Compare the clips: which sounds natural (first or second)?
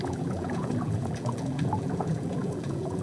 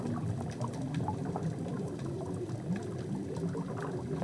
second